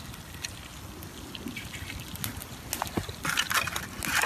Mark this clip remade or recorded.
recorded